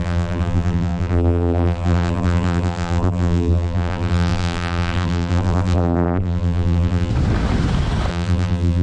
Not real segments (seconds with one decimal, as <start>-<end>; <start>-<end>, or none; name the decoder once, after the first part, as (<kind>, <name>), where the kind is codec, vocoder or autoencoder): 0.0-7.1 (vocoder, BigVGAN v2); 8.1-8.8